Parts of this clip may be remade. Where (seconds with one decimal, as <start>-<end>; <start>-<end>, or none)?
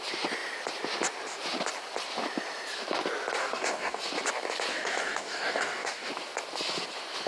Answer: 3.4-4.0; 4.7-6.1